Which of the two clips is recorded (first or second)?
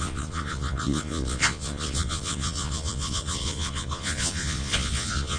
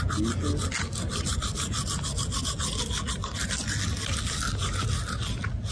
second